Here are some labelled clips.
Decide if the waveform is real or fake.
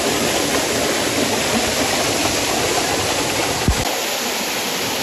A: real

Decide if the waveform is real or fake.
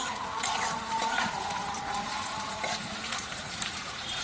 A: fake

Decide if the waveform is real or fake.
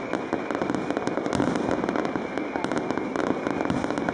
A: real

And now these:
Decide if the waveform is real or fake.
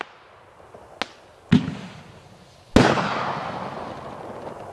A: real